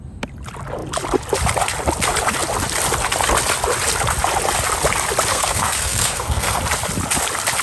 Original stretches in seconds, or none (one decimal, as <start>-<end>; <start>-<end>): 0.0-5.3; 6.6-7.6